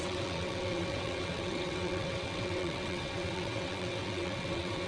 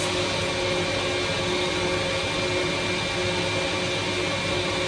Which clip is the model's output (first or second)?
first